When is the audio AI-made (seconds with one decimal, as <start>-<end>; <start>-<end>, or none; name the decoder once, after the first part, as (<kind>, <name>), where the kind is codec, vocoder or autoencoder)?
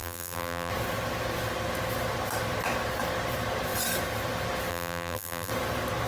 0.0-0.7 (vocoder, BigVGAN v2); 4.7-5.5